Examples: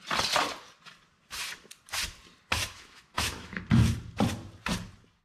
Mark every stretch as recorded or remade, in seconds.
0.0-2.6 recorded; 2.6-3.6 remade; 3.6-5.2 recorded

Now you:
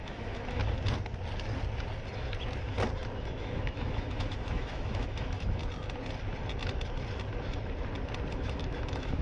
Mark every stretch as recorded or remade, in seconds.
0.0-0.6 remade; 0.6-3.2 recorded; 3.2-5.6 remade; 5.6-8.3 recorded; 8.3-9.2 remade

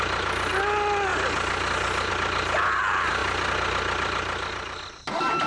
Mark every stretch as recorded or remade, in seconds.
0.0-5.5 recorded

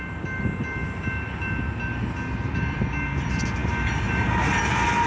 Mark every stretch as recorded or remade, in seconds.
0.0-5.1 recorded

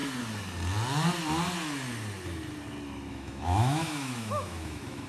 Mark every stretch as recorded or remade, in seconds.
0.0-3.1 recorded; 3.1-5.1 remade